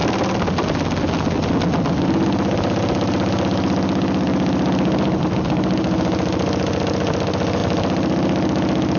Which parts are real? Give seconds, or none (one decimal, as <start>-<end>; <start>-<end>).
0.0-9.0